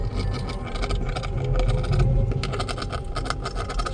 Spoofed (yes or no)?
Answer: no